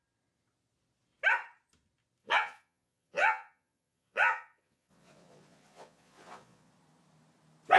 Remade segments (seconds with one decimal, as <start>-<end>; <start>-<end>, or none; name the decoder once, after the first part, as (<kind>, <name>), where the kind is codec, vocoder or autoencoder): 2.2-6.7 (vocoder, Vocos)

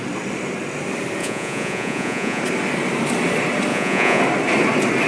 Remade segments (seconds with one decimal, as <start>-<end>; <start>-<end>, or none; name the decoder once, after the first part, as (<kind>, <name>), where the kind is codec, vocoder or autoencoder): 1.2-2.4 (vocoder, Vocos); 3.7-4.2

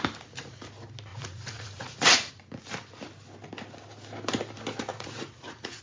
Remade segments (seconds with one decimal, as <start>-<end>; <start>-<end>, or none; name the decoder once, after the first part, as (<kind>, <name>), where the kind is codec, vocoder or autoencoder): 1.1-2.3 (vocoder, Vocos); 4.9-5.8

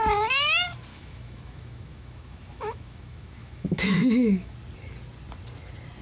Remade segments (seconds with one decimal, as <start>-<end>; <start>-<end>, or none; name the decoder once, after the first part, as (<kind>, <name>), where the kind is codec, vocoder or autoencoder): 0.9-4.5 (autoencoder, DAC-VAE)

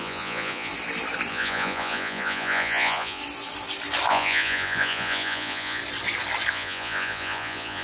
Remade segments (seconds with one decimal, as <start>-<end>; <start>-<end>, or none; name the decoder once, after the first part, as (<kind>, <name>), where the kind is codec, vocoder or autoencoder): 0.0-0.7 (vocoder, Vocos); 1.3-3.2; 4.1-5.8; 6.5-7.8

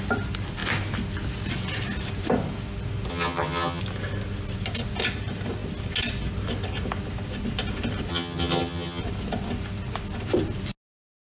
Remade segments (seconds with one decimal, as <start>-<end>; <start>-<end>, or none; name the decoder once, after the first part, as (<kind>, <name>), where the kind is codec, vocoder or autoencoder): 3.1-3.8 (vocoder, HiFi-GAN); 8.1-9.0